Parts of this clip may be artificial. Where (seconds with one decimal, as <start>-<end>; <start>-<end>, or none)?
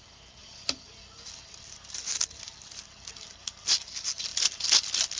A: none